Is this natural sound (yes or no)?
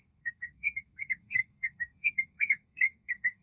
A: no